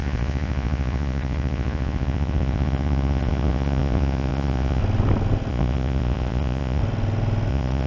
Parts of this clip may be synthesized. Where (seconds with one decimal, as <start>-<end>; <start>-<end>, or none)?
0.0-4.8; 5.5-6.8; 7.5-7.9